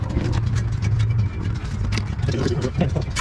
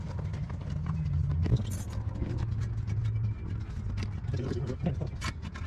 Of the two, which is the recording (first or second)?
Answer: second